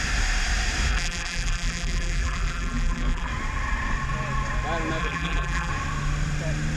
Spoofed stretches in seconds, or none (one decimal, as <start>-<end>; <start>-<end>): 0.9-3.3; 5.0-5.7